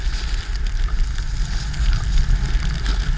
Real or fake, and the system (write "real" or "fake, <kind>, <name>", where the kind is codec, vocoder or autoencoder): real